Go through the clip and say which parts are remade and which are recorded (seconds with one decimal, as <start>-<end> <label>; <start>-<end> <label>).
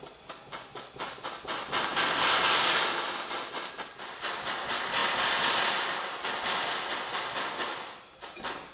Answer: 0.0-8.7 recorded